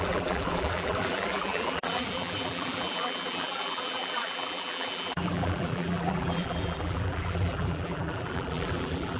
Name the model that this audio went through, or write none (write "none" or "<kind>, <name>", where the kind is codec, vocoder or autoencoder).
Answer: vocoder, BigVGAN v2